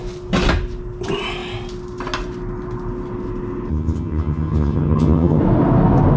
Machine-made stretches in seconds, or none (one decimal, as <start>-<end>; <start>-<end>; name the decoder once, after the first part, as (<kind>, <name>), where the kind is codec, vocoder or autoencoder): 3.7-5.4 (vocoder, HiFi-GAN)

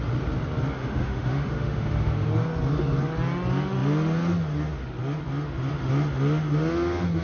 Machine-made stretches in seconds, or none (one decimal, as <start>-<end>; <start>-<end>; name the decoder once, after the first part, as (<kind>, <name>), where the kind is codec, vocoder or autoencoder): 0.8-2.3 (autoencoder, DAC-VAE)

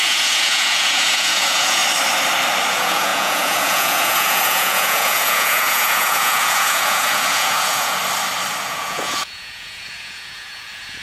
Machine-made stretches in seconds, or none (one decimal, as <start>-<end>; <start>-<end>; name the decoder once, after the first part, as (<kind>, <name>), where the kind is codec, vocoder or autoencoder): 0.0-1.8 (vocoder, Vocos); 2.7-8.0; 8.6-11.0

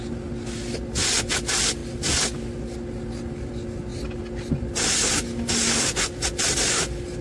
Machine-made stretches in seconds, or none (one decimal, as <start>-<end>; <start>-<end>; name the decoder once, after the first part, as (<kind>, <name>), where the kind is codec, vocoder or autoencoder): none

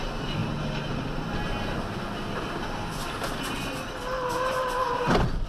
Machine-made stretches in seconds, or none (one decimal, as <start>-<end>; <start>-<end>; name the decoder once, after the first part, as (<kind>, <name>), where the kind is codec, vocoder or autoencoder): none